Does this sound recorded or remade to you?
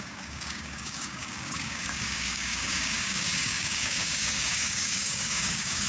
remade